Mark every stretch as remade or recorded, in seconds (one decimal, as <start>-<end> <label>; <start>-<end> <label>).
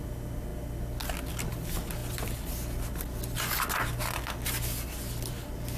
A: 0.0-5.8 recorded